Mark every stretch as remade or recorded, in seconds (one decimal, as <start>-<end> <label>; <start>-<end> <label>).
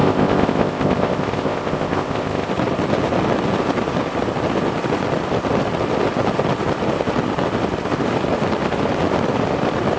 0.0-2.5 remade; 2.5-10.0 recorded